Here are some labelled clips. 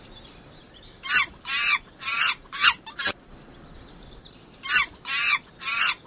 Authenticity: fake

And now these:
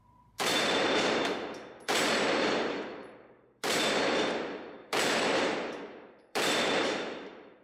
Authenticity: fake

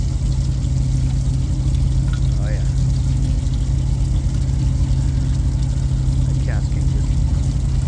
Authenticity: real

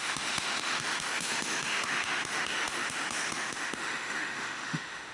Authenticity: fake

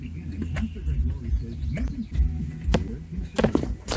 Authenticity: real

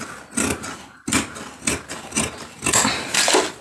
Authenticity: real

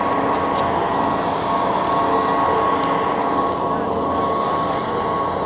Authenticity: real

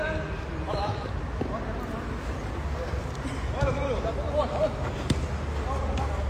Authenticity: real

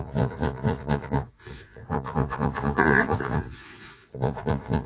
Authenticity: fake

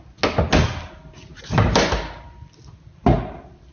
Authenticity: real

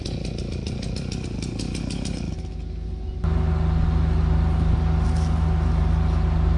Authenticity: real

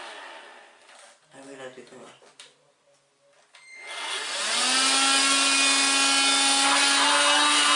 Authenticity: real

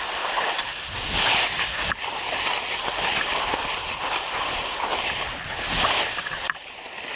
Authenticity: real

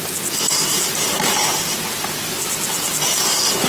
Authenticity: real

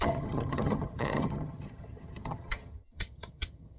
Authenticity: fake